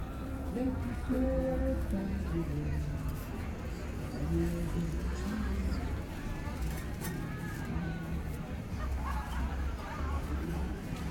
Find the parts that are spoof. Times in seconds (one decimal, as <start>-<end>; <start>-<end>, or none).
0.0-1.6; 5.6-10.7